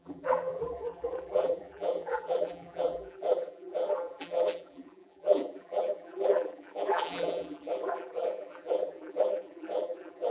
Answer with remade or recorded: remade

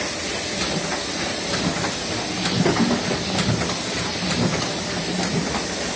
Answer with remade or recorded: remade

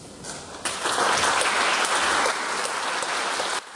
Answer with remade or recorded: recorded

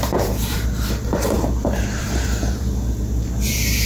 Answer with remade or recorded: remade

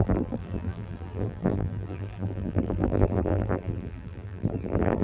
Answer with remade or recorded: remade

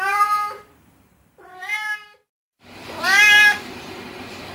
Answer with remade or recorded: remade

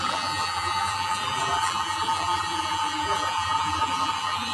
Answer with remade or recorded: remade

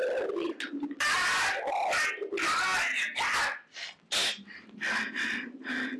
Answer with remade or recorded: recorded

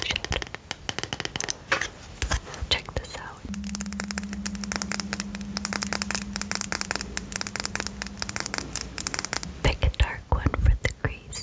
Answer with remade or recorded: recorded